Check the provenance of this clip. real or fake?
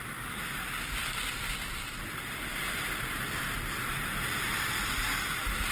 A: real